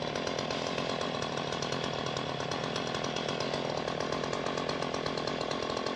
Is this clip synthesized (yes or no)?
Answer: no